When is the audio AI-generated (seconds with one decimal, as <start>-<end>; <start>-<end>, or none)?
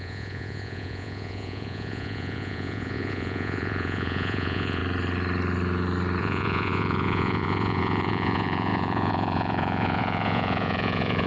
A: 0.0-4.8; 6.2-11.3